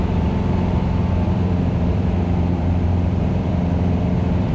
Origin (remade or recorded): remade